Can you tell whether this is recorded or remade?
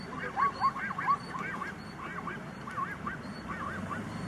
remade